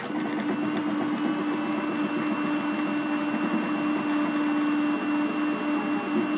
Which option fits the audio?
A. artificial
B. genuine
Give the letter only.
B